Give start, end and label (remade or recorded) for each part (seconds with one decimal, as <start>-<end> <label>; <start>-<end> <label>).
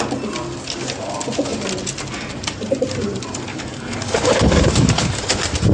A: 0.0-3.5 recorded; 3.5-5.2 remade; 5.2-5.7 recorded